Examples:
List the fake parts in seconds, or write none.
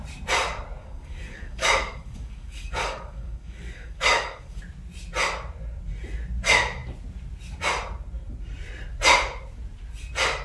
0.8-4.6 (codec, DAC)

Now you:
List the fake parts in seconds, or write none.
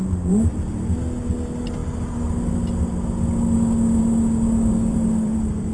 4.7-5.7 (vocoder, BigVGAN v2)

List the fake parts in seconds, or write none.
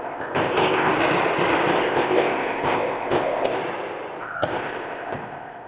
0.0-0.9 (codec, ZipCodec); 1.8-3.6; 4.2-5.7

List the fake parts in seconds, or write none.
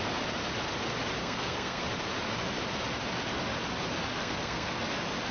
1.2-1.8 (codec, SNAC); 4.2-4.8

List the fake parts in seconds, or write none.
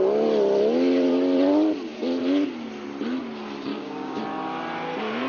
3.7-4.2 (codec, DAC)